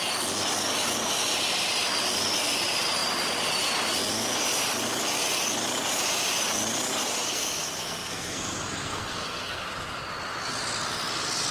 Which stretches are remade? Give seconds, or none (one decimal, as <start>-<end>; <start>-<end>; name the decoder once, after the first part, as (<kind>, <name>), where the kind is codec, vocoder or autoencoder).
7.2-9.6 (codec, SNAC)